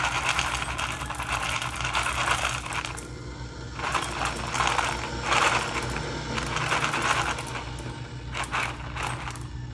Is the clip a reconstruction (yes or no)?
no